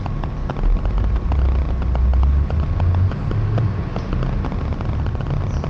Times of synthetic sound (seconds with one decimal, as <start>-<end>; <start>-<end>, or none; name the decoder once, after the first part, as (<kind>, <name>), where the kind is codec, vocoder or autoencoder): none